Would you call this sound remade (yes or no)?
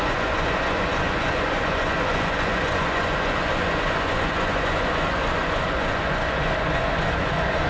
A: yes